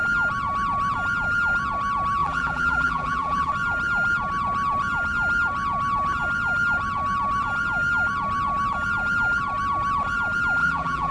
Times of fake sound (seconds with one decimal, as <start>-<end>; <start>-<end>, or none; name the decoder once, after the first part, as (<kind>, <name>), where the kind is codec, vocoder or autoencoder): 2.2-3.5 (vocoder, BigVGAN v2); 10.6-11.1